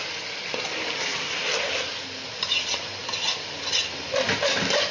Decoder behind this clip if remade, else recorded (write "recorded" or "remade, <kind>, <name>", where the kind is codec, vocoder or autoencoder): recorded